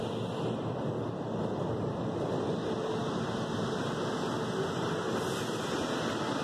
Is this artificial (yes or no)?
no